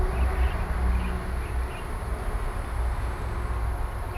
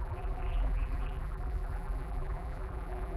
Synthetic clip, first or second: second